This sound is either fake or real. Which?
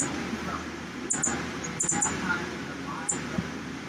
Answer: real